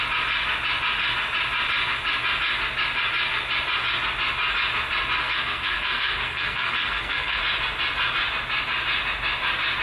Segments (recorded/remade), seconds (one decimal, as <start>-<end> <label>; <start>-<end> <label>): 0.0-5.2 recorded; 5.2-7.4 remade; 7.4-9.8 recorded